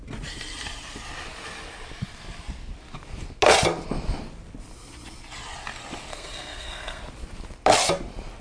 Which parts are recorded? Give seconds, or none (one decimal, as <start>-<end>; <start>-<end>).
0.0-6.1; 7.0-8.4